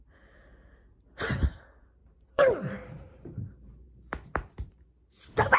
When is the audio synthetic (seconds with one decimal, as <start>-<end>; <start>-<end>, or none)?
2.0-5.0